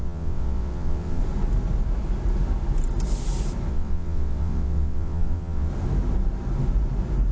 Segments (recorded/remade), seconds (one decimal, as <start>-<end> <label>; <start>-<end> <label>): 0.0-1.2 remade; 1.2-3.7 recorded; 3.7-5.7 remade; 5.7-7.3 recorded